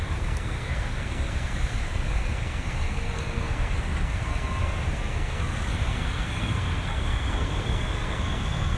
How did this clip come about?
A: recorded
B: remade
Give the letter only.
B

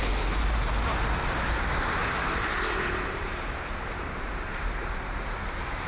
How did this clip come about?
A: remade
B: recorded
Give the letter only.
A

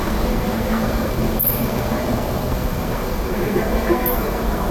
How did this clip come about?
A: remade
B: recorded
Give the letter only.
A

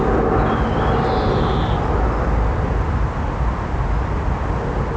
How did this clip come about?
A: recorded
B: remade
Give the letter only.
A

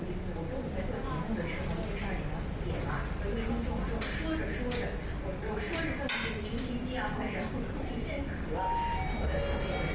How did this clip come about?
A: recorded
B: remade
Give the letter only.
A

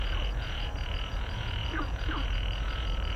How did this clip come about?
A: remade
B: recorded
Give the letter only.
A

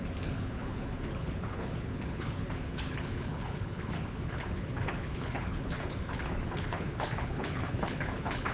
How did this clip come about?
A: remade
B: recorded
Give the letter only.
A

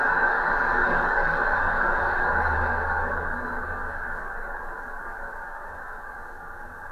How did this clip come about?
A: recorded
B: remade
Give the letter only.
B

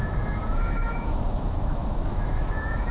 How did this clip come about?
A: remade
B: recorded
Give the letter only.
A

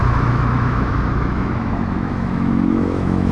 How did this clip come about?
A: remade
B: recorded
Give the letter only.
A